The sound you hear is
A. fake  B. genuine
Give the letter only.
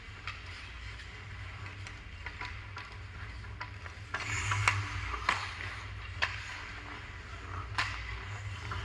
B